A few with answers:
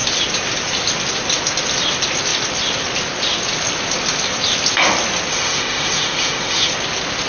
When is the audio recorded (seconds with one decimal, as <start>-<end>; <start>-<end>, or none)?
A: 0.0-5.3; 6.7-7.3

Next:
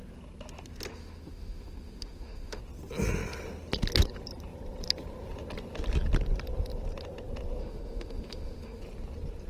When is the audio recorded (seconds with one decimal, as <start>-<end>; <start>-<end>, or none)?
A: 0.0-0.9; 2.6-7.6; 8.8-9.5

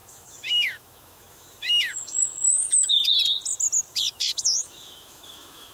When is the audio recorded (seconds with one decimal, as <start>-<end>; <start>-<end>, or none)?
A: 3.1-3.9

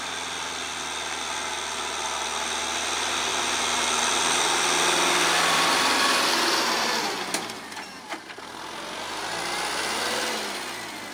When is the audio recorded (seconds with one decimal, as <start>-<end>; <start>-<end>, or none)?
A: 0.0-11.1

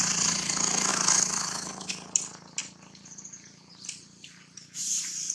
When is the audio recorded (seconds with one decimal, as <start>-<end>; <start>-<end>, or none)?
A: 0.0-0.9; 1.9-5.3